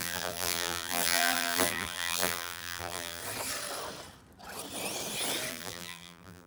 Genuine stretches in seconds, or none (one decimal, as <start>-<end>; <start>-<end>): 3.2-5.5